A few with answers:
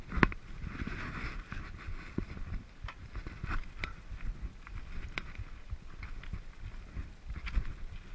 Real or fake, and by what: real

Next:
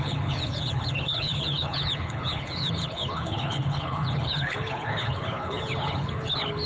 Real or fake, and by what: fake, codec, HILCodec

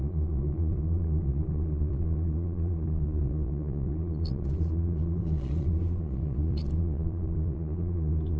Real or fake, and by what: fake, vocoder, Vocos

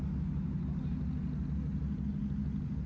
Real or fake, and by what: real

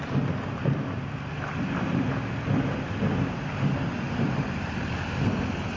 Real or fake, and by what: real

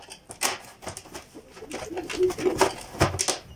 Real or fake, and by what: real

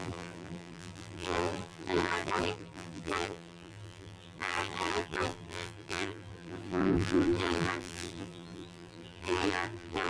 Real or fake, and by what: fake, vocoder, BigVGAN v2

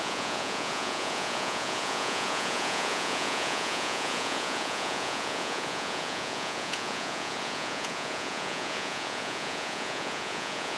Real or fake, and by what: fake, vocoder, Vocos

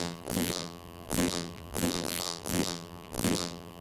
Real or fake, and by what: fake, vocoder, BigVGAN v2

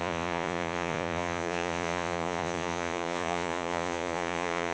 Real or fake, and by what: fake, vocoder, Vocos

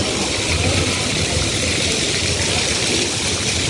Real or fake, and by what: real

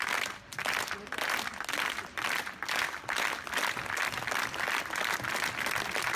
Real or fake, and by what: real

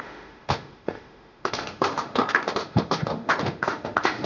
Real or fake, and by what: fake, autoencoder, DAC-VAE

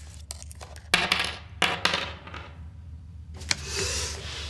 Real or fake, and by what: real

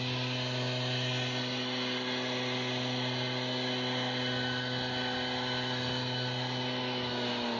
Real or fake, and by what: real